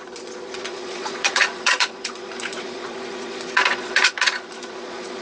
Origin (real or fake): fake